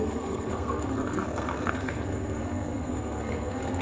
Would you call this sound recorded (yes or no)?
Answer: no